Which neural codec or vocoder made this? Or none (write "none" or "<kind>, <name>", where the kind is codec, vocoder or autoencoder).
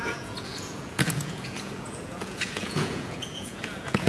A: vocoder, Vocos